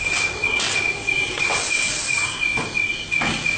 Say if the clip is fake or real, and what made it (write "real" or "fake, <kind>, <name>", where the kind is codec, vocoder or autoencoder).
real